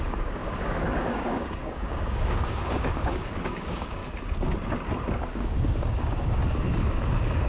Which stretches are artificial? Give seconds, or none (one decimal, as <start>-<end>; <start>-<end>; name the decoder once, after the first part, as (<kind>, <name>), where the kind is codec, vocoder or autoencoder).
0.0-4.0 (codec, DAC); 5.3-6.4; 7.0-7.5